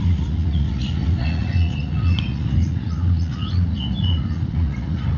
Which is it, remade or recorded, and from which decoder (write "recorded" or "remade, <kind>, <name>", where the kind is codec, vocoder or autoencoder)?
remade, vocoder, Vocos